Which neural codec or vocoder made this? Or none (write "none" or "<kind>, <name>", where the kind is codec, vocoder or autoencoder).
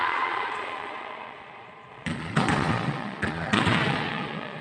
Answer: vocoder, Vocos